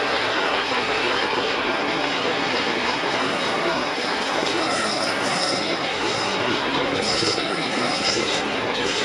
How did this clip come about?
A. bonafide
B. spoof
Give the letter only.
B